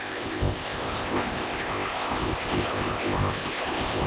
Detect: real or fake fake